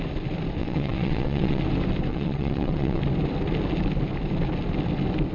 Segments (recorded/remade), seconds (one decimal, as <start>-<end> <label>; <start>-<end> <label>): 0.0-0.6 recorded; 0.6-1.6 remade; 1.6-2.1 recorded; 2.1-3.0 remade; 3.0-5.3 recorded